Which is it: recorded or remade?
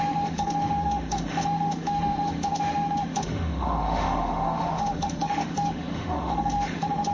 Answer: remade